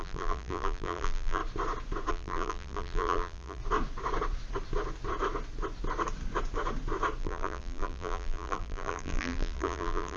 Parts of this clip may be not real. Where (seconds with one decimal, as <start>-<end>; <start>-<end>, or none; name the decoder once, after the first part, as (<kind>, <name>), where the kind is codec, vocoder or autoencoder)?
0.0-1.4 (vocoder, BigVGAN v2); 2.1-3.6; 7.2-10.2